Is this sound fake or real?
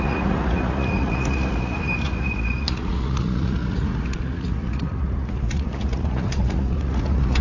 fake